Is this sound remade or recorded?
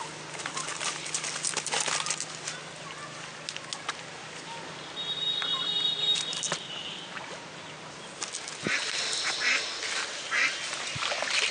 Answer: recorded